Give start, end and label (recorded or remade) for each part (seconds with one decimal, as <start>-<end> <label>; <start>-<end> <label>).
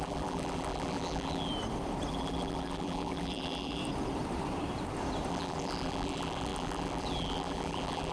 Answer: 0.0-1.5 remade; 1.5-2.1 recorded; 2.1-3.8 remade; 3.8-5.3 recorded; 5.3-8.1 remade